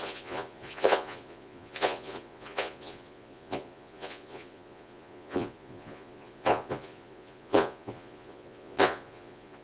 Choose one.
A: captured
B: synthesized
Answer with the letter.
B